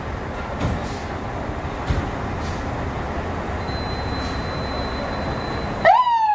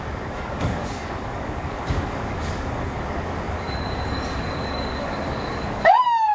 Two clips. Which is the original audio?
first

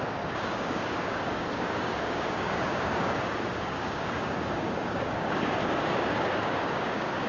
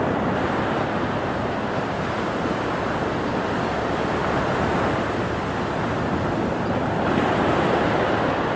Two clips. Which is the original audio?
second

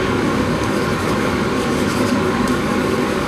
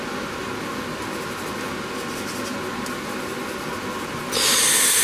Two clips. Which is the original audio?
second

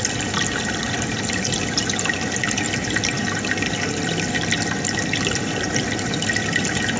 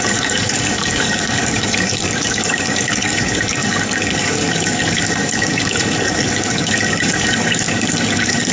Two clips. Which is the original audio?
first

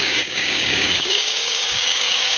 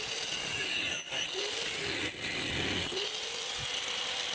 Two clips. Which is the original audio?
second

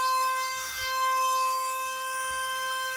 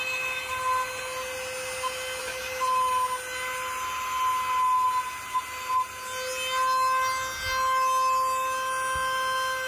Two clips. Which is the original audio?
second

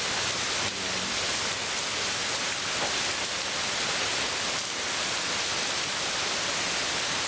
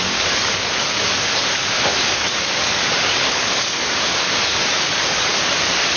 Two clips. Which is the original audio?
first